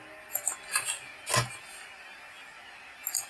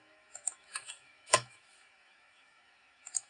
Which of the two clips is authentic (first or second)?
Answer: first